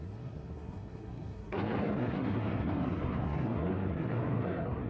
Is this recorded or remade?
remade